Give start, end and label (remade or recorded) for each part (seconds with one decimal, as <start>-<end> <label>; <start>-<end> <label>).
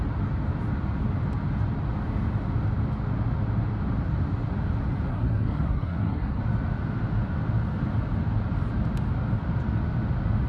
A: 0.0-5.1 recorded; 5.1-6.4 remade; 6.4-10.5 recorded